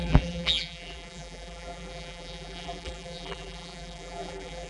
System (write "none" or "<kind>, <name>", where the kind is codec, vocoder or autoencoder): vocoder, BigVGAN v2